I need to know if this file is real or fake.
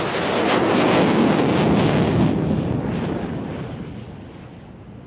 real